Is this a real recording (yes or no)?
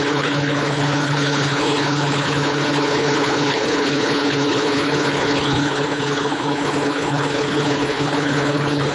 no